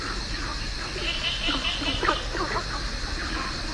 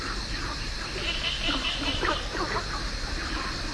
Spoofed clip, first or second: second